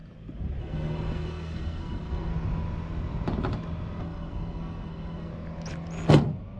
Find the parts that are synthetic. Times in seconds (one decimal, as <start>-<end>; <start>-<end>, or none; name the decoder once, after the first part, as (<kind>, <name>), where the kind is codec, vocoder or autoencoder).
0.6-2.3 (codec, SNAC); 4.0-5.3